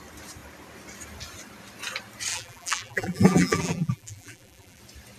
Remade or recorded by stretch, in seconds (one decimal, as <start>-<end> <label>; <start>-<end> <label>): 0.0-2.3 recorded; 2.3-4.8 remade; 4.8-5.2 recorded